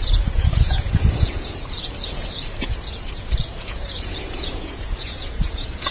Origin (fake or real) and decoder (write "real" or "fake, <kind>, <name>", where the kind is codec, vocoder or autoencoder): fake, vocoder, Vocos